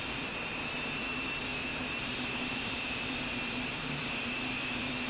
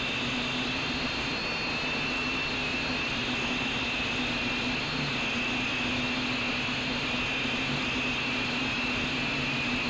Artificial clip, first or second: first